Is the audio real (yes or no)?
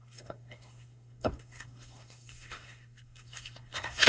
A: no